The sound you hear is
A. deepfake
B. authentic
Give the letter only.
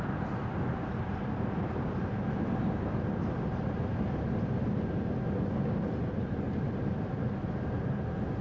B